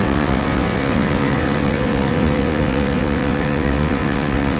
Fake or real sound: fake